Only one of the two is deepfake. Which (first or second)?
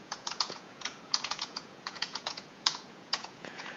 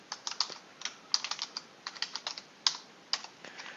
first